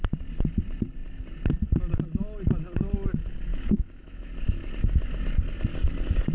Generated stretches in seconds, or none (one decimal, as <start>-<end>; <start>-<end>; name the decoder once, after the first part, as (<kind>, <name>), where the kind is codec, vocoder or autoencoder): 3.5-4.3 (autoencoder, DAC-VAE)